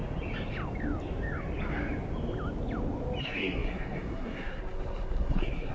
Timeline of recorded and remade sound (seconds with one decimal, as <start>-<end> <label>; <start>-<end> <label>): 0.0-3.2 recorded; 3.2-5.7 remade